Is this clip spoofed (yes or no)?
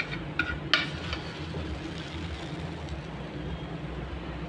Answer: no